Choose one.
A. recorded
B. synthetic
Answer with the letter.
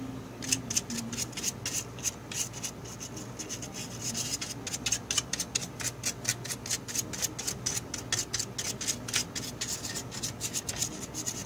A